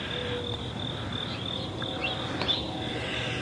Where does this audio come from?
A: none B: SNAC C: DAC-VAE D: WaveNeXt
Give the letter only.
A